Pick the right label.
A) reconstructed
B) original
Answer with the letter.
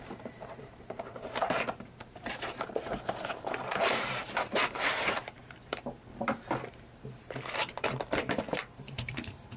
A